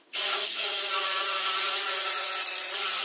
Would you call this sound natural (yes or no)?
no